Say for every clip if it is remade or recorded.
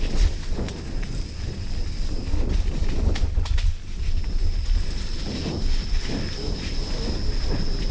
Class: recorded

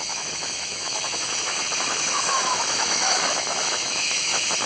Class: remade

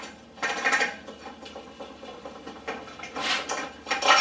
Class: recorded